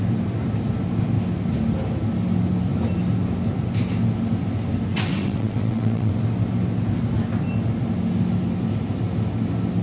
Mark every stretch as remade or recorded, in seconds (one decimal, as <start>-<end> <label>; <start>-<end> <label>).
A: 0.0-4.9 recorded; 4.9-6.1 remade; 6.1-9.8 recorded

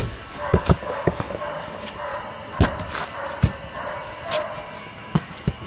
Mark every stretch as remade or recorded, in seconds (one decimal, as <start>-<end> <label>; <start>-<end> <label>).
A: 0.0-2.1 remade; 2.1-4.8 recorded; 4.8-5.7 remade

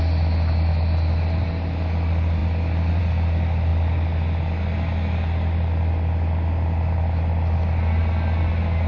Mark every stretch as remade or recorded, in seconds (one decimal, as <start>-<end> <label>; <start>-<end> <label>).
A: 0.0-8.9 recorded